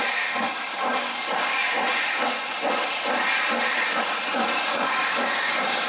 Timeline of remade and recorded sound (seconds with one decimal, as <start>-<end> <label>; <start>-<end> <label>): 0.0-1.2 remade; 1.2-4.7 recorded; 4.7-5.9 remade